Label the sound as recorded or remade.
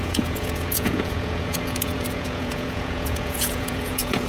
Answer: remade